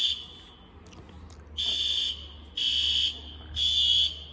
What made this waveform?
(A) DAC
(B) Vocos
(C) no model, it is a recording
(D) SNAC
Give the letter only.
C